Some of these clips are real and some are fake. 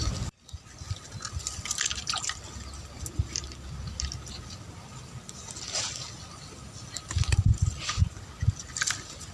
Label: real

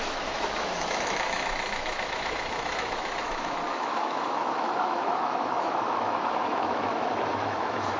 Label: fake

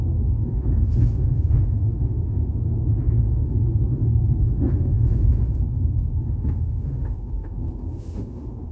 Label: fake